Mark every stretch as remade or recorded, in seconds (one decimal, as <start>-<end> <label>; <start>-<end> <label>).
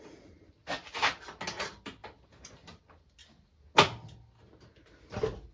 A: 0.0-5.5 recorded